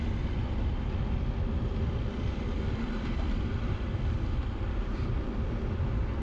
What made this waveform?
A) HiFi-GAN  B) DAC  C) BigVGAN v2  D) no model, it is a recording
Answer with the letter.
D